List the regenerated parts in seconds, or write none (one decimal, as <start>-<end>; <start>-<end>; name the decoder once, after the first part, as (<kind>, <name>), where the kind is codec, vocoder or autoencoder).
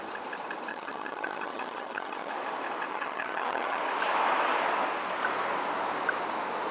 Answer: 0.7-2.3 (vocoder, HiFi-GAN); 2.9-3.8